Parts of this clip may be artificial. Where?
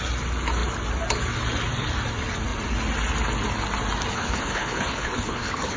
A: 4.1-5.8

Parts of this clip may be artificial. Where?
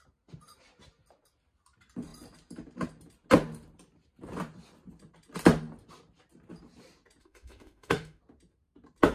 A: 7.2-8.2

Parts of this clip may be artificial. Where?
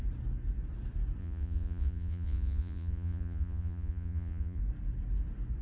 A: 1.2-4.6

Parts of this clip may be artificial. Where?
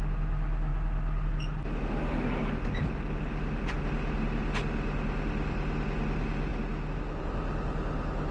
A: none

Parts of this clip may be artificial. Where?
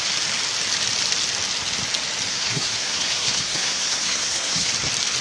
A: 2.3-4.7